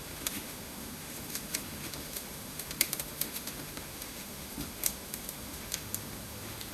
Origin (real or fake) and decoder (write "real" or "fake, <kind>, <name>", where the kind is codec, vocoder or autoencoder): fake, autoencoder, DAC-VAE